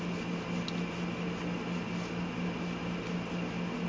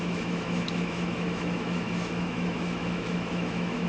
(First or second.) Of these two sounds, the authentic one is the first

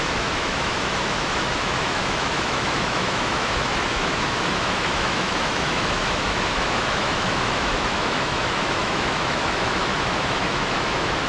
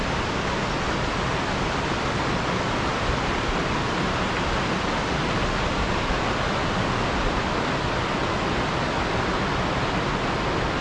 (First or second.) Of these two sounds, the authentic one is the second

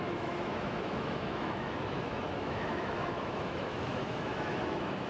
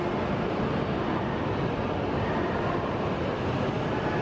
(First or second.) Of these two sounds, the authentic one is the second